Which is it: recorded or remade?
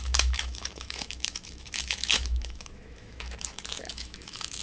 remade